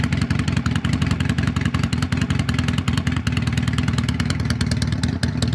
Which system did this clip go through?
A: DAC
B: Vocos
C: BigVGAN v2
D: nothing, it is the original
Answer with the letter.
D